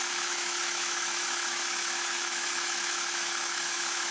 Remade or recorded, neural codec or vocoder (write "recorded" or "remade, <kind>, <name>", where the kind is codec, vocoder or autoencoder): remade, autoencoder, DAC-VAE